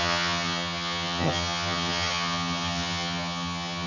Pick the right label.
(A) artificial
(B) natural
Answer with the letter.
A